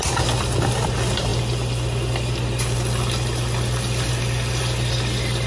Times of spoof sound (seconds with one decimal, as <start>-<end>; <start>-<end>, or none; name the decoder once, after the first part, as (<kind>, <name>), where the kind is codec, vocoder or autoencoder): none